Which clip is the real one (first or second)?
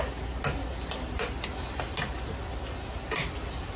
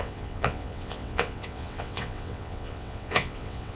first